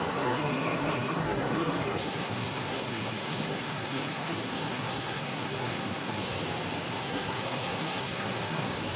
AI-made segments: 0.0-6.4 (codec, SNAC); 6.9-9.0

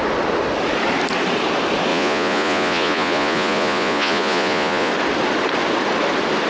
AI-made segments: 1.9-4.9 (vocoder, Vocos)